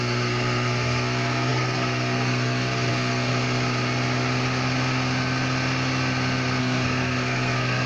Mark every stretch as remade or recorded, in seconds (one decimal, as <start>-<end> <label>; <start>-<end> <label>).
0.0-3.3 remade; 3.3-6.6 recorded; 6.6-7.9 remade